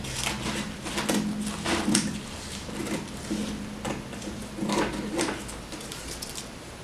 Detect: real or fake real